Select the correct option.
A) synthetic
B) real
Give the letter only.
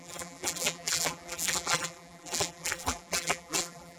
A